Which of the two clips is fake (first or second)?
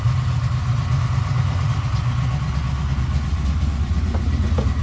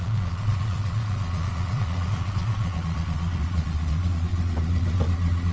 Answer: second